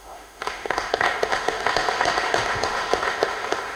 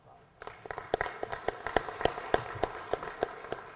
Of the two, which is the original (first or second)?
second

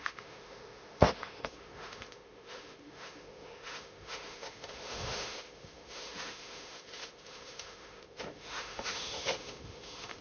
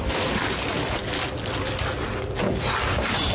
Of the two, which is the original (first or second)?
second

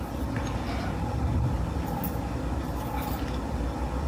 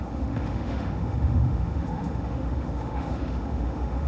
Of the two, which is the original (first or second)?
first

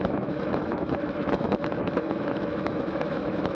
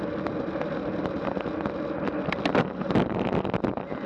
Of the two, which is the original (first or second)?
second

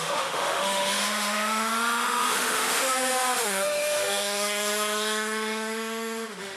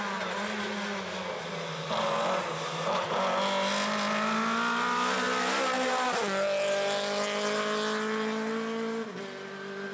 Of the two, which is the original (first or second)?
second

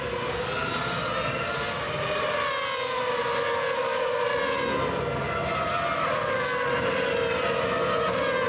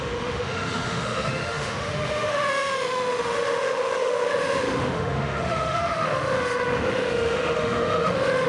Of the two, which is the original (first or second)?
first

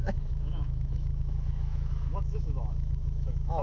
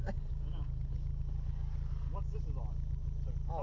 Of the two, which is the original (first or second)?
second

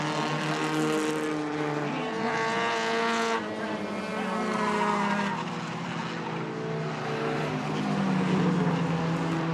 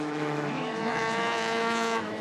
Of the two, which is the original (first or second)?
first